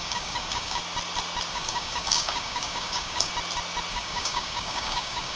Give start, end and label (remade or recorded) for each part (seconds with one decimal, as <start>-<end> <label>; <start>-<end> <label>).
0.0-0.8 remade; 0.8-1.5 recorded; 1.5-3.3 remade; 3.3-3.9 recorded; 3.9-5.4 remade